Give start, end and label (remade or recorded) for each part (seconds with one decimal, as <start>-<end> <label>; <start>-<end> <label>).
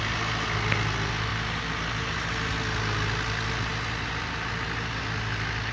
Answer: 0.0-5.7 recorded